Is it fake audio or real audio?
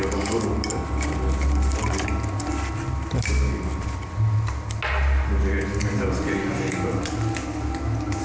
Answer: real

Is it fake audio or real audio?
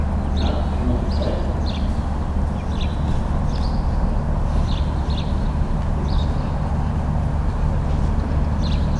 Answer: real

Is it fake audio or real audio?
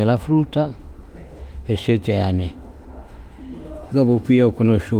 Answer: fake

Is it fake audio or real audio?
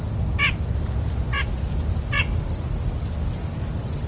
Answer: real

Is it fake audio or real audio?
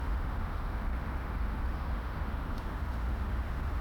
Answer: fake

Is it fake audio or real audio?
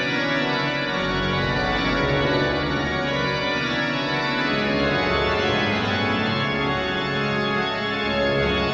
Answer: real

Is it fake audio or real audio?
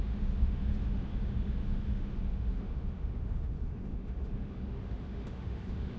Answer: fake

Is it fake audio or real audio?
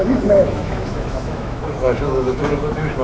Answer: fake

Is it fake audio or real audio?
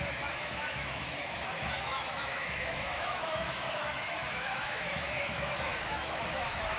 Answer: fake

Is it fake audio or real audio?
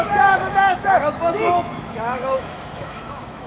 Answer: fake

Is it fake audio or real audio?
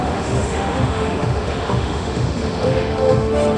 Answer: fake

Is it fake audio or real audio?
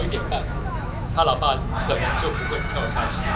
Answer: fake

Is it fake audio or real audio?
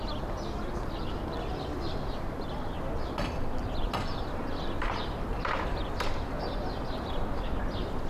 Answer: real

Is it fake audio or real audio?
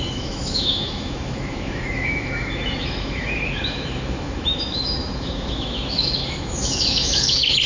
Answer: fake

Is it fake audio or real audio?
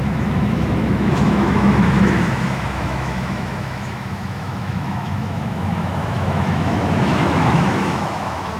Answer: fake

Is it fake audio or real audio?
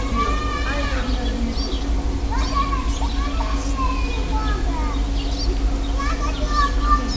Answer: real